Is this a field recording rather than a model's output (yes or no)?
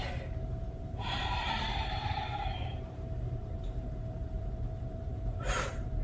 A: no